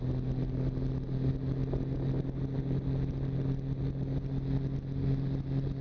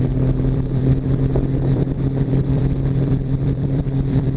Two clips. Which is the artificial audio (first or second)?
second